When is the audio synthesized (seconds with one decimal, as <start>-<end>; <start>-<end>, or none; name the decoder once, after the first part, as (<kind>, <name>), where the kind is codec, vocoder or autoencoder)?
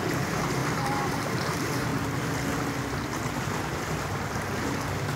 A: 0.0-1.9 (vocoder, BigVGAN v2)